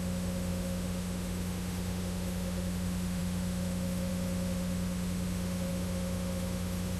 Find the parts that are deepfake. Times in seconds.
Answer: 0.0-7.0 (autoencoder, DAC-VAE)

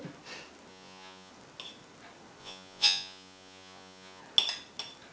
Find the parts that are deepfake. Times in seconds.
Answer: 0.7-1.3 (vocoder, Vocos); 2.4-4.2

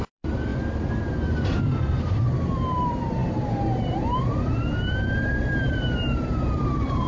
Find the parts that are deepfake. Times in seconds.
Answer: 0.0-0.5 (vocoder, BigVGAN v2); 1.5-7.1